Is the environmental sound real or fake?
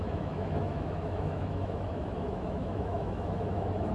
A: fake